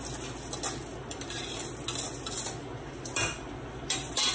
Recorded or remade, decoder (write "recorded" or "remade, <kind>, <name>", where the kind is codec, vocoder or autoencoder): recorded